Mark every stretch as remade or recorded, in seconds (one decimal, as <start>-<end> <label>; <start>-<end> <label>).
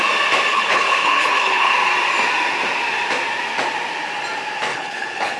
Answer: 0.0-0.5 recorded; 0.5-1.7 remade; 1.7-4.7 recorded; 4.7-5.4 remade